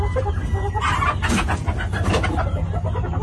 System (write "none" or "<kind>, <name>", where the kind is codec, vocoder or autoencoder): none